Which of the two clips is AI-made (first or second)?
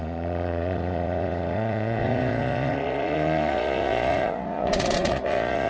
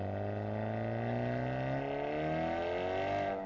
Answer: first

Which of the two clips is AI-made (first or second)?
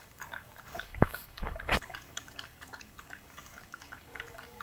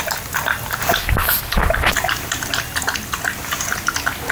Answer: first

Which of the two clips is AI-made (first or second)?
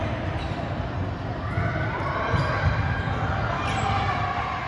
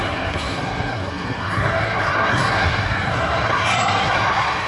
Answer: second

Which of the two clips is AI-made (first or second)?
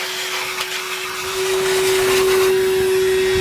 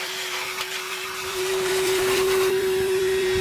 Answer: second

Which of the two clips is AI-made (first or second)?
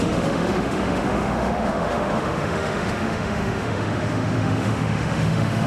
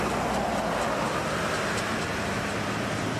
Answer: first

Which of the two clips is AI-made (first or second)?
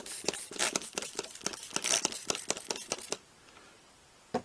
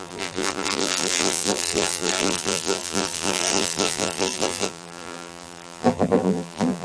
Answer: second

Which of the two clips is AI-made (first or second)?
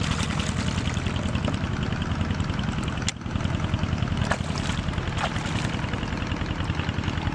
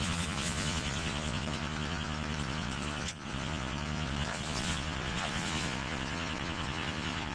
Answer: second